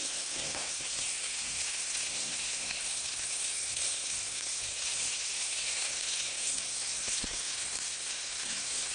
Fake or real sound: fake